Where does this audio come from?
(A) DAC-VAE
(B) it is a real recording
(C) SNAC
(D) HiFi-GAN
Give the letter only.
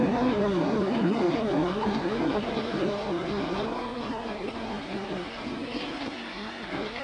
C